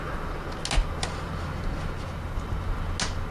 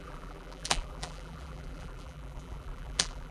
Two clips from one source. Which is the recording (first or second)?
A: first